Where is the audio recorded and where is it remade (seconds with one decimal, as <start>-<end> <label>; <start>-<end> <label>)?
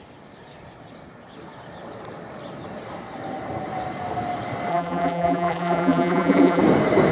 0.0-4.7 recorded; 4.7-6.6 remade; 6.6-7.1 recorded